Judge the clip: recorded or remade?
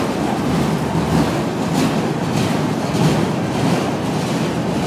recorded